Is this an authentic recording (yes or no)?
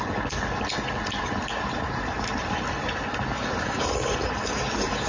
yes